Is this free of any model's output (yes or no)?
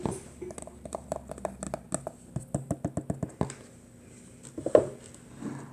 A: yes